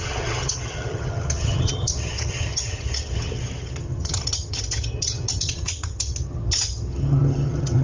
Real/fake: fake